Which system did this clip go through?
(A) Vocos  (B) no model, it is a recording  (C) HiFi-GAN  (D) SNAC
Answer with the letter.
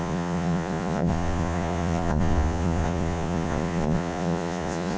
A